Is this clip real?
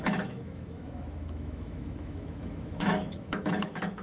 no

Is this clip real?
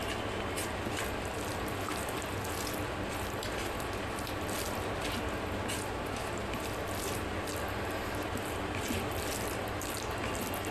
yes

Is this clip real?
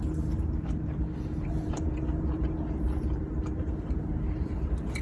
no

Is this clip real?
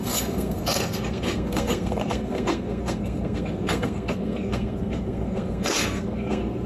no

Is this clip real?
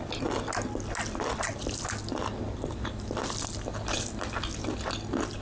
yes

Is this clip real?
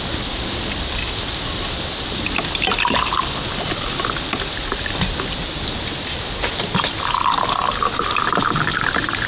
yes